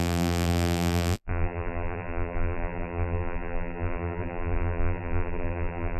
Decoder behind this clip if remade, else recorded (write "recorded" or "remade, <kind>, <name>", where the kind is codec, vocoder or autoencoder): remade, vocoder, BigVGAN v2